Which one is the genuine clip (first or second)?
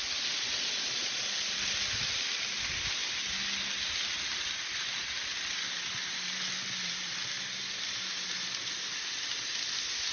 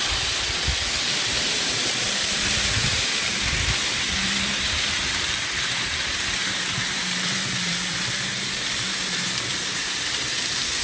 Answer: first